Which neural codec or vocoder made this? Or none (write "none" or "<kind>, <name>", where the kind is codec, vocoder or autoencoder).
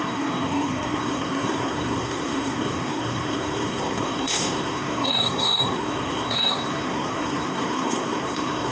codec, SNAC